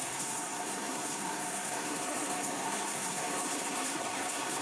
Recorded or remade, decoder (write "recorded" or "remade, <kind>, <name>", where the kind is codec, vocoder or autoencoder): remade, codec, SNAC